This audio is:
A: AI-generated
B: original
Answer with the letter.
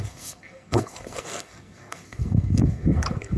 A